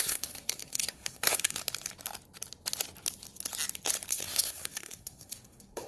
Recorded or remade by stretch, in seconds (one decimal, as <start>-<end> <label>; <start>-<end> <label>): 0.0-1.6 remade; 1.6-4.1 recorded; 4.1-5.9 remade